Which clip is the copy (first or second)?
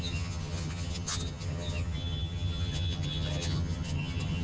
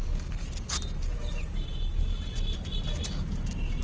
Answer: first